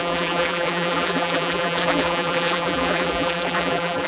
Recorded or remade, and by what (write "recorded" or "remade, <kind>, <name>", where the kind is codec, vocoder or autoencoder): remade, vocoder, BigVGAN v2